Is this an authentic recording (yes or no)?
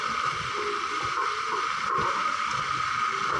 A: no